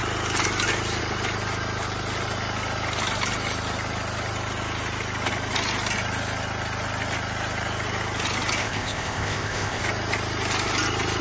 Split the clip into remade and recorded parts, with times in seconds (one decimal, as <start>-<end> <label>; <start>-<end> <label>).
0.0-8.6 recorded; 8.6-9.8 remade; 9.8-11.2 recorded